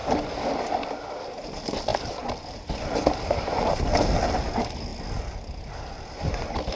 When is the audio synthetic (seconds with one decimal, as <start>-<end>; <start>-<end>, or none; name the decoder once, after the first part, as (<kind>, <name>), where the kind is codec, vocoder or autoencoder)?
4.9-5.5 (vocoder, BigVGAN v2)